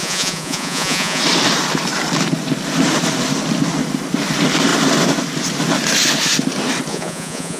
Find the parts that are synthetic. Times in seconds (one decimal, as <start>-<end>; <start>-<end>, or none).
0.0-1.2; 6.9-7.6